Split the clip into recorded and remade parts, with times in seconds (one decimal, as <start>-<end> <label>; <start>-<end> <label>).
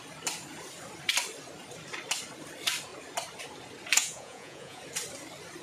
0.0-4.0 recorded; 4.0-4.8 remade; 4.8-5.6 recorded